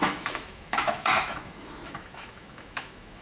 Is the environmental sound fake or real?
fake